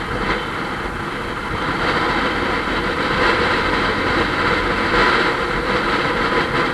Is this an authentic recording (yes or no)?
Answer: yes